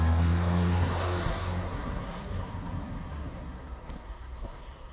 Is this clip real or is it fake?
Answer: fake